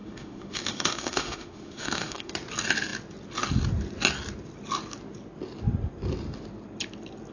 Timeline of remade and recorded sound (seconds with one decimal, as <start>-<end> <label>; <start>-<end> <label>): 0.0-2.3 remade; 2.3-7.3 recorded